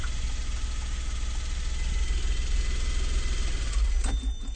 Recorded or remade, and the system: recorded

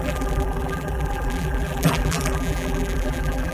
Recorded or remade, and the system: remade, vocoder, BigVGAN v2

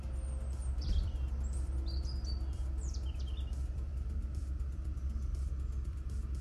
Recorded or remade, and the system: remade, vocoder, BigVGAN v2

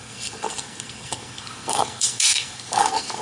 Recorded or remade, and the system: remade, codec, SNAC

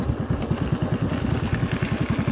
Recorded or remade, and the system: recorded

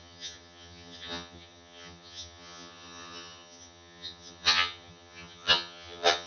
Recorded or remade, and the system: remade, vocoder, HiFi-GAN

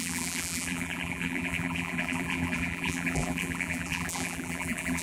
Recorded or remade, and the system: remade, vocoder, BigVGAN v2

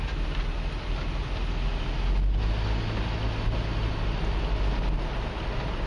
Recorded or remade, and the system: recorded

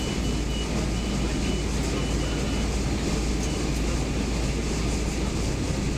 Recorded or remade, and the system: recorded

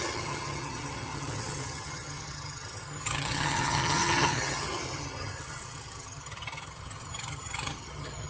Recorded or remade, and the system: remade, vocoder, HiFi-GAN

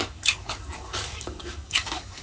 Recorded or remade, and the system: remade, codec, DAC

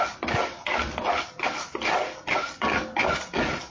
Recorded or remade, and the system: recorded